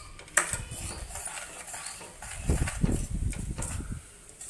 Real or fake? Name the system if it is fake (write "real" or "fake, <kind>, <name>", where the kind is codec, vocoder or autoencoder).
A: fake, vocoder, BigVGAN v2